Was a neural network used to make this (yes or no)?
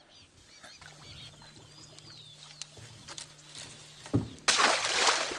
no